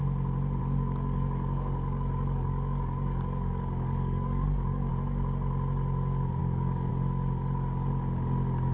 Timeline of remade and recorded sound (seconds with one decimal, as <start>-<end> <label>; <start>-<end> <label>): 0.0-0.6 recorded; 0.6-4.9 remade; 4.9-6.4 recorded; 6.4-6.9 remade; 6.9-8.7 recorded